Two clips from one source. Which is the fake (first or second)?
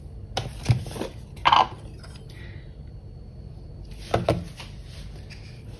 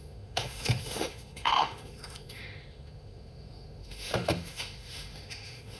second